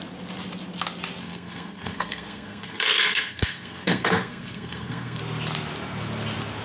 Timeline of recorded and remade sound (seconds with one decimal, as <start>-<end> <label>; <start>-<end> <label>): 0.0-1.2 recorded; 1.2-5.2 remade; 5.2-6.6 recorded

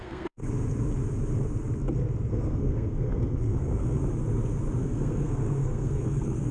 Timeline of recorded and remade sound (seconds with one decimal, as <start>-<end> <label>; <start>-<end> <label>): 0.0-0.4 remade; 0.4-2.3 recorded; 2.3-4.0 remade; 4.0-4.8 recorded; 4.8-6.5 remade

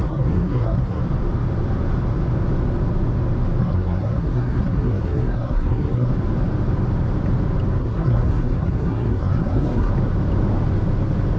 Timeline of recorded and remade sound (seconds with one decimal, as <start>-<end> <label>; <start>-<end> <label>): 0.0-1.0 remade; 1.0-3.6 recorded; 3.6-6.1 remade; 6.1-7.8 recorded; 7.8-9.9 remade; 9.9-11.4 recorded